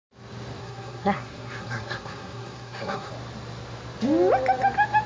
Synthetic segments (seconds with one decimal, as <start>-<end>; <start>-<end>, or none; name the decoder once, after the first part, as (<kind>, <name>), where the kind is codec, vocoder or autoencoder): 0.6-3.1 (codec, SNAC)